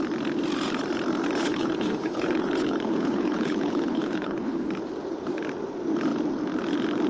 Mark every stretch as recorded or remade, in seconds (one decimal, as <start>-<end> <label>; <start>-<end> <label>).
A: 0.0-1.4 recorded; 1.4-4.7 remade; 4.7-7.1 recorded